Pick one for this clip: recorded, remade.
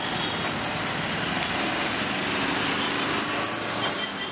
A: recorded